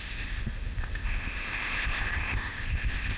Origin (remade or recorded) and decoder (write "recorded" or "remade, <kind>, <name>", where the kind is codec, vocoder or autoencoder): remade, codec, ZipCodec